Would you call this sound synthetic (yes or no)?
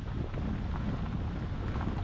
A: no